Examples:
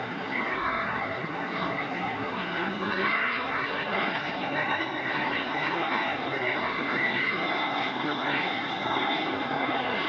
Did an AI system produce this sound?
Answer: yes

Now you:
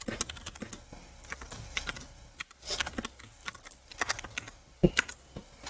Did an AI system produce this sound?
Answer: no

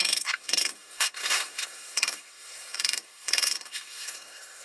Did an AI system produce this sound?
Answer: yes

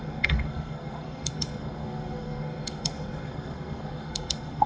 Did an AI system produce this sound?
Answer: yes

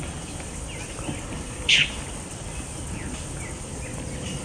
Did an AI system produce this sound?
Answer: no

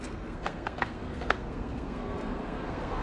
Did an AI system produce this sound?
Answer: yes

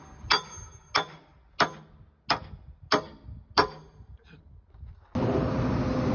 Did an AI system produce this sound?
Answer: no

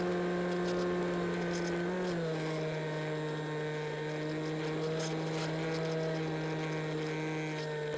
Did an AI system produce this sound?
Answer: no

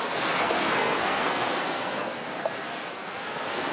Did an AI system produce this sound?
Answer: yes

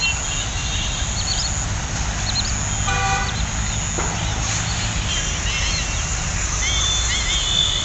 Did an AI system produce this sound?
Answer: no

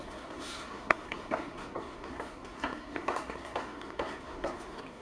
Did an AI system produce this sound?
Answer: yes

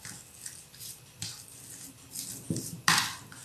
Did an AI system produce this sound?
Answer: no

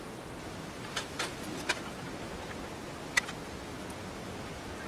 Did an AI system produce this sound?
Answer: no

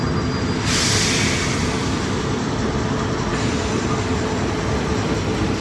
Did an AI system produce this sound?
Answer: no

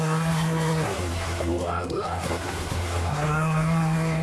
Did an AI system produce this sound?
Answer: yes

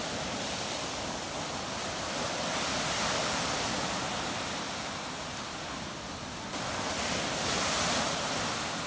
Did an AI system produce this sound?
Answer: no